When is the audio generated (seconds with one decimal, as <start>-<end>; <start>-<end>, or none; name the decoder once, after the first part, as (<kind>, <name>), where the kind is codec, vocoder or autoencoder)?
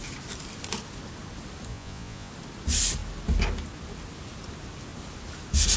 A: 1.7-2.3 (vocoder, Vocos)